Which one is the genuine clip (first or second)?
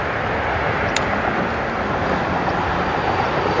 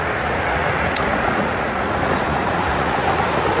first